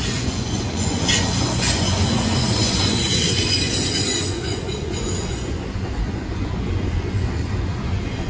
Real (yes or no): no